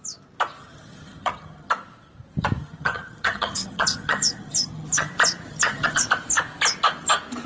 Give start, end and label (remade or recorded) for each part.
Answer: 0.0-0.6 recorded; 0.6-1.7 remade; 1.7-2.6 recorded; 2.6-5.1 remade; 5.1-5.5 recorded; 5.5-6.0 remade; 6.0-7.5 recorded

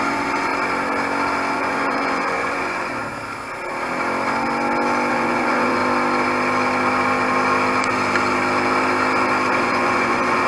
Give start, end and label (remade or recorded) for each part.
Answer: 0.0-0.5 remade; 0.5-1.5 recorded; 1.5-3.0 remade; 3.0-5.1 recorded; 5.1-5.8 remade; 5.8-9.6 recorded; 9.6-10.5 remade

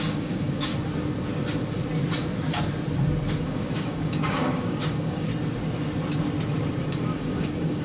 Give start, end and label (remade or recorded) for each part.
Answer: 0.0-0.7 remade; 0.7-3.4 recorded; 3.4-5.3 remade; 5.3-6.9 recorded; 6.9-7.8 remade

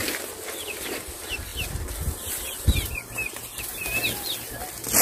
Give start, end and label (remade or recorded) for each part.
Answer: 0.0-5.0 recorded